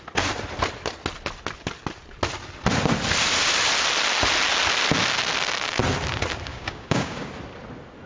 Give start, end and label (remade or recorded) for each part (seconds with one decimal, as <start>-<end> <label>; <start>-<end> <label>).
0.0-6.5 recorded; 6.5-7.3 remade; 7.3-8.1 recorded